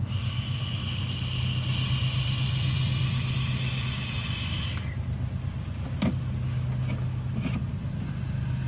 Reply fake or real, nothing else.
real